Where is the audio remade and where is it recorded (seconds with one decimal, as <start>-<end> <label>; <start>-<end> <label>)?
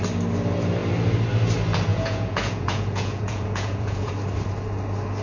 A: 0.0-1.9 recorded; 1.9-4.1 remade; 4.1-5.2 recorded